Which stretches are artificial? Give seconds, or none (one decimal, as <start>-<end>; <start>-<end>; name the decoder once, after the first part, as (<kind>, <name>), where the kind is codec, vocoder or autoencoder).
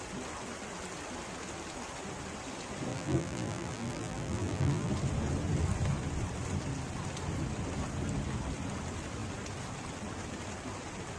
2.9-4.9 (vocoder, BigVGAN v2)